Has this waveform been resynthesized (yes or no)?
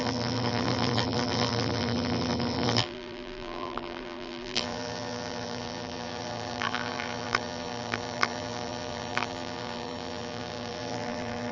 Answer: yes